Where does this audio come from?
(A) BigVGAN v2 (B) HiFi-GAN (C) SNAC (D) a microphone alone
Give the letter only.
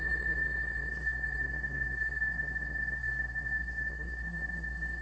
C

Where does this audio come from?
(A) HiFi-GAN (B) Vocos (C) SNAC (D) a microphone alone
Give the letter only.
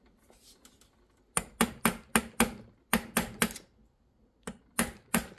D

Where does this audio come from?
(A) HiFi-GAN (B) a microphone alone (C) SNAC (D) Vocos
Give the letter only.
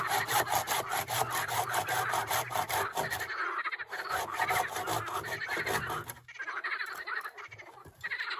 B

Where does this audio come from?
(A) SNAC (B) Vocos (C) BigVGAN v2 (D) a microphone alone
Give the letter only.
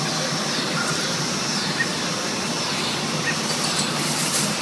D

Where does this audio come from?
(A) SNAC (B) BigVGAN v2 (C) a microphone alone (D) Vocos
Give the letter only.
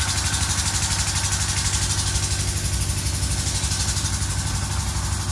C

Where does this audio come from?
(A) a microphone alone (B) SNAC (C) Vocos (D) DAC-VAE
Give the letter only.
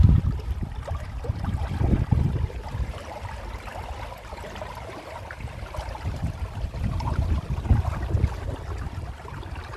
A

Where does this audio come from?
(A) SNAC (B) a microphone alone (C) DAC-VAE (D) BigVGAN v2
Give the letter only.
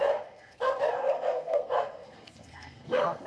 A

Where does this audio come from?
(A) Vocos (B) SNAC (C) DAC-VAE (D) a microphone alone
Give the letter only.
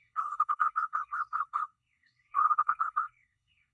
B